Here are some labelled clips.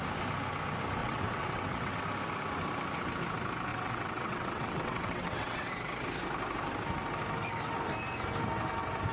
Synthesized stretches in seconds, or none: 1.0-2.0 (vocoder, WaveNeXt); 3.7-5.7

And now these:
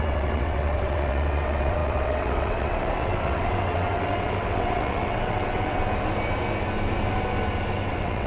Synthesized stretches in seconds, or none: 0.0-5.8 (vocoder, WaveNeXt); 7.9-8.3

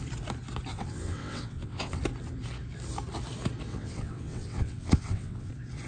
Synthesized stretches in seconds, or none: 0.7-2.0 (vocoder, WaveNeXt); 3.7-5.5

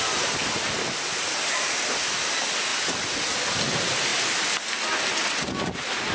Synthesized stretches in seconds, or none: none

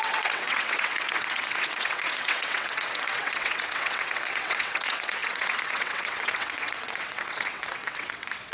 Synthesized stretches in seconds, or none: 0.0-8.5 (vocoder, WaveNeXt)

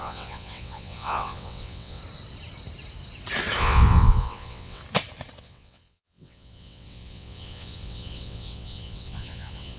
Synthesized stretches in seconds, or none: 0.0-2.0 (vocoder, WaveNeXt); 3.6-4.8; 5.4-9.8

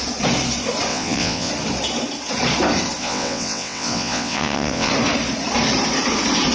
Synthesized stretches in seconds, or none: 0.9-1.5 (vocoder, WaveNeXt); 3.0-4.9

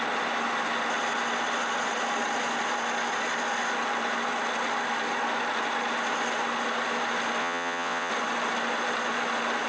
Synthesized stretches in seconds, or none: 7.4-8.1 (vocoder, WaveNeXt)